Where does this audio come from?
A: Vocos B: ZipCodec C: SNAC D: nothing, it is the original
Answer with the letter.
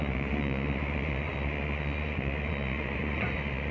A